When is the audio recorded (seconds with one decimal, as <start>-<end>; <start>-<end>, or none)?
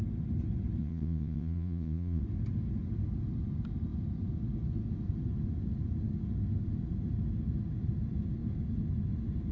0.0-0.8; 2.2-9.5